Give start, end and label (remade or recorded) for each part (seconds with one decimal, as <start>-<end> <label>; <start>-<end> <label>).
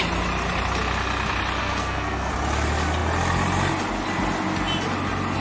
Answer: 0.0-1.6 recorded; 1.6-2.3 remade; 2.3-5.4 recorded